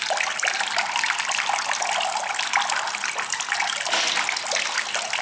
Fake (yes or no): no